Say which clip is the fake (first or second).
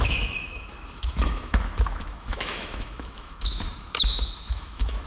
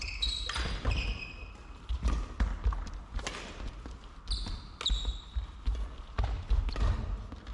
first